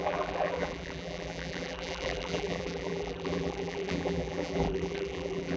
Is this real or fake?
fake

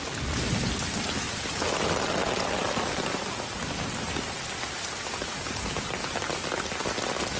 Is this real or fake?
real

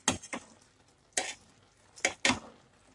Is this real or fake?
real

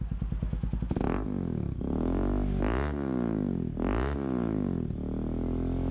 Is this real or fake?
real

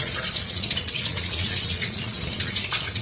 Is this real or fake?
fake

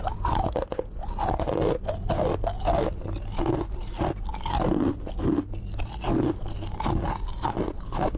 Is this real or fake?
real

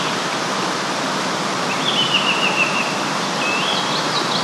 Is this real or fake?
real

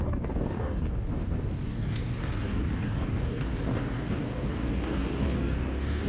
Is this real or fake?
fake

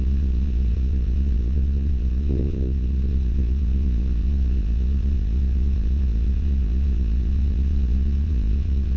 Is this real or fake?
fake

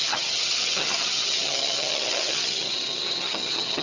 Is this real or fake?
fake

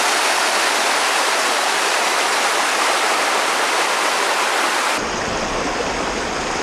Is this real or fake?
real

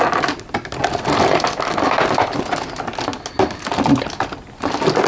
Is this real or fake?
real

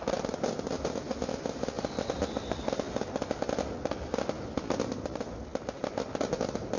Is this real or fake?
real